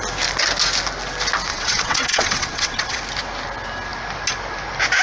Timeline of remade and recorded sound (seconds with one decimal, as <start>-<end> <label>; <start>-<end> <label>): 0.0-1.5 recorded; 1.5-3.0 remade; 3.0-5.0 recorded